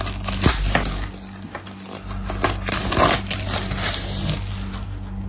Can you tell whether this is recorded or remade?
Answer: recorded